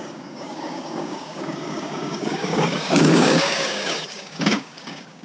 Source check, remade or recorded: remade